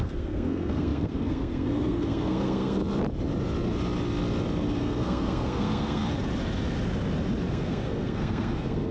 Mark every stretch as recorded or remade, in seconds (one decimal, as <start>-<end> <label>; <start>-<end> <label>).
0.0-2.8 remade; 2.8-4.8 recorded; 4.8-6.0 remade; 6.0-7.5 recorded; 7.5-8.9 remade